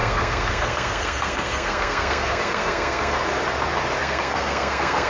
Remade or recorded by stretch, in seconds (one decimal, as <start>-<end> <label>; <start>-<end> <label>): 0.0-3.2 remade; 3.2-4.0 recorded; 4.0-5.1 remade